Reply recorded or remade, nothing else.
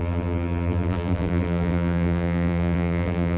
remade